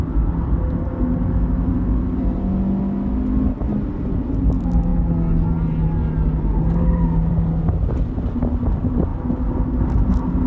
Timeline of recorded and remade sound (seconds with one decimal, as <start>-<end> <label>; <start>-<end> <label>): 0.0-10.5 recorded